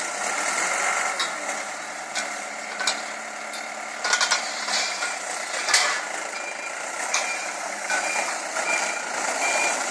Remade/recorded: remade